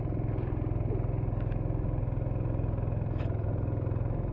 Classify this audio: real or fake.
real